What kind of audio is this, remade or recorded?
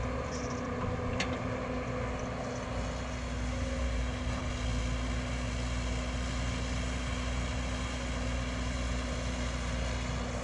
recorded